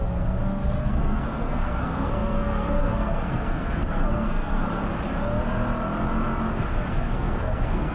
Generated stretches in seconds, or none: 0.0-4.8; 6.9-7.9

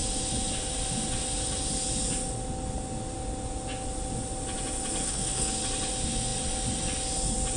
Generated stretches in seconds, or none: 5.0-5.5

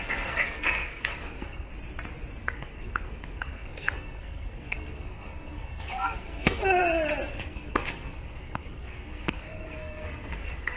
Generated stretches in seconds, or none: 0.0-1.7; 2.4-6.8; 7.3-10.8

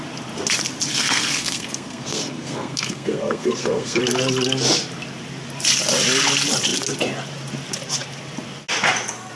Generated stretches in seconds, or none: 0.9-4.0

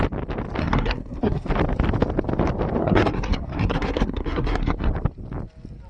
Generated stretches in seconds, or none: 0.6-1.5; 2.8-4.9

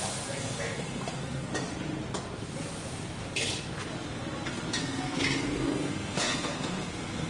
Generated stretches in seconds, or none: 0.0-1.5; 4.8-7.3

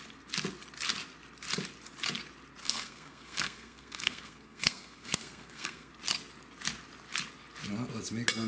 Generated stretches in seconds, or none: 2.6-5.9

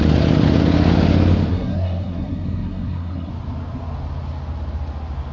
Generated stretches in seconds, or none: 1.5-3.3